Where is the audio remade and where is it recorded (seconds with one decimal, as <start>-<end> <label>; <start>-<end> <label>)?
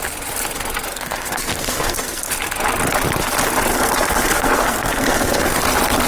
0.0-0.9 recorded; 0.9-2.3 remade; 2.3-3.7 recorded; 3.7-5.6 remade; 5.6-6.1 recorded